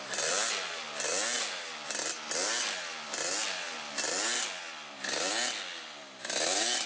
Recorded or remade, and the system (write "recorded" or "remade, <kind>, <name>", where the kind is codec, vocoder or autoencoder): recorded